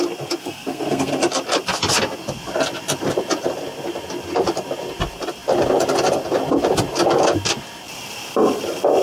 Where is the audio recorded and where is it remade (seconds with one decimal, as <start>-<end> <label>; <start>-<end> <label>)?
0.0-0.4 recorded; 0.4-1.1 remade; 1.1-9.0 recorded

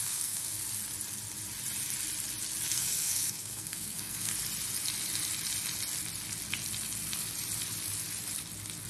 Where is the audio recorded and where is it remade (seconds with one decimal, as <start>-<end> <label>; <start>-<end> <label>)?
0.0-0.6 remade; 0.6-2.7 recorded; 2.7-4.3 remade; 4.3-8.9 recorded

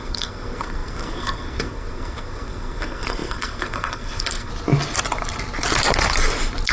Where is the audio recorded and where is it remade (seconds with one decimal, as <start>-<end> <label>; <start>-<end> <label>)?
0.0-4.5 remade; 4.5-6.7 recorded

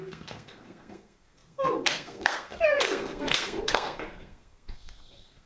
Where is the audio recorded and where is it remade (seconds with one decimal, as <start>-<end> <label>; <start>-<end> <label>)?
0.0-5.5 remade

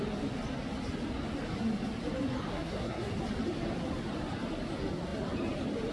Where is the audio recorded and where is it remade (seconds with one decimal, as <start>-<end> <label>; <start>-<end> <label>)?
0.0-2.5 recorded; 2.5-3.1 remade; 3.1-5.9 recorded